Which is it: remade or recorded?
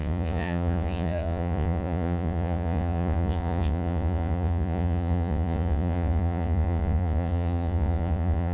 remade